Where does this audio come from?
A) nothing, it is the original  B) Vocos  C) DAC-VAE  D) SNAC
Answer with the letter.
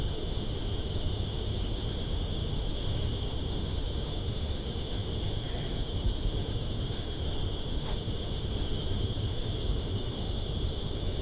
C